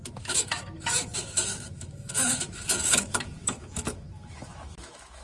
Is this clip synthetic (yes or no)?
yes